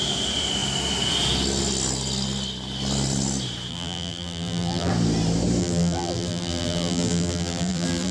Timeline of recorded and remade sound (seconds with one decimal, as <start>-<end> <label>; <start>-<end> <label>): 0.0-3.7 recorded; 3.7-4.9 remade; 4.9-5.6 recorded; 5.6-8.1 remade